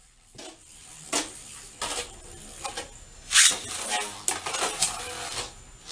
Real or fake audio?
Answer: real